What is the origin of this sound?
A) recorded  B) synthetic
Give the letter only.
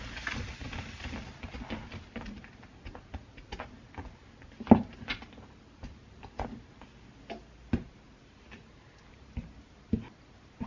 A